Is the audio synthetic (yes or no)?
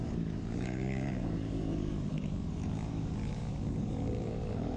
yes